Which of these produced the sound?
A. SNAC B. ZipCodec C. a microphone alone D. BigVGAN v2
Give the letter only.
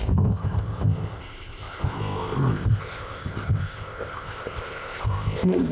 B